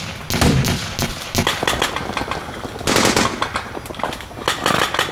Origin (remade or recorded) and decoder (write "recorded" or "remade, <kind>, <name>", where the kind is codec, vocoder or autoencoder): recorded